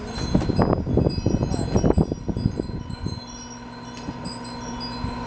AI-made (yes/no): no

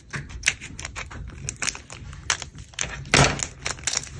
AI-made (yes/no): no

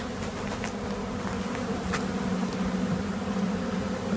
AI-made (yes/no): no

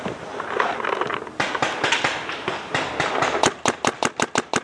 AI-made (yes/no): no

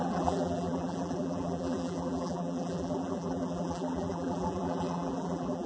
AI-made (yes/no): yes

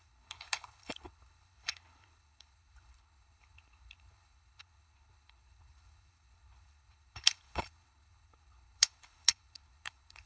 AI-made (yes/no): yes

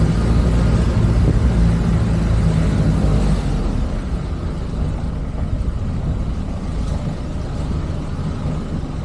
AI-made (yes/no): no